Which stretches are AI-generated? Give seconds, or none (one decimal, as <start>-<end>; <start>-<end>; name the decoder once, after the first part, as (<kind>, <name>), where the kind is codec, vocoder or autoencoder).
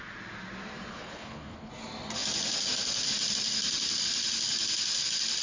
0.9-1.7 (codec, HILCodec)